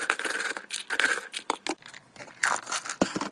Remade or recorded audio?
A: remade